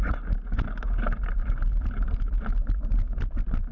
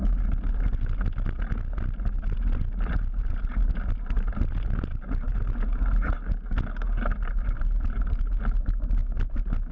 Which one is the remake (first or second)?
first